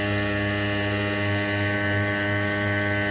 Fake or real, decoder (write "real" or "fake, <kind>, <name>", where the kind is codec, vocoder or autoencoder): real